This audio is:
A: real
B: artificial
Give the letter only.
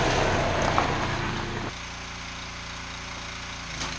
A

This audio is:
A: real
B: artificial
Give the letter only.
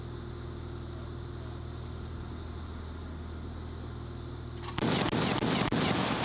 A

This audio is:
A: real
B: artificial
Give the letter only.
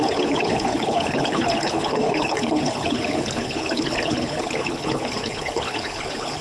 B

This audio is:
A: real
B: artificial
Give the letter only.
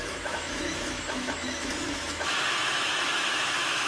B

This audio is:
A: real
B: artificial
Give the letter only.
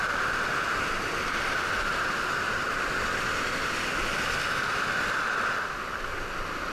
A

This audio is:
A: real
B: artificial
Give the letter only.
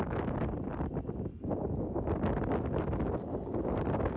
A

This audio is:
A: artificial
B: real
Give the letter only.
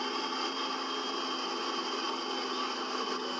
B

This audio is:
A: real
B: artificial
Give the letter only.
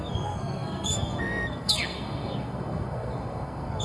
B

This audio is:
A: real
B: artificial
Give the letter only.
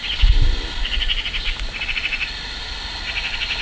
A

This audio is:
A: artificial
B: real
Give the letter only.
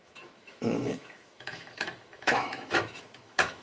A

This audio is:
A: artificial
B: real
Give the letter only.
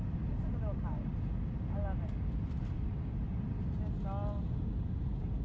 B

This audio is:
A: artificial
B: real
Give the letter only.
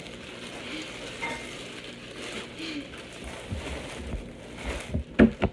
B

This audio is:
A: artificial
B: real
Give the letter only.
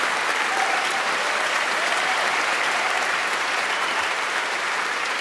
A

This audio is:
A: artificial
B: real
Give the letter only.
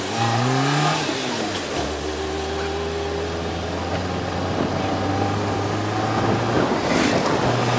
B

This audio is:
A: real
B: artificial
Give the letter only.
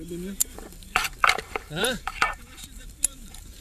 B